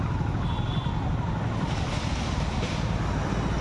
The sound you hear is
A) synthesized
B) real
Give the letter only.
B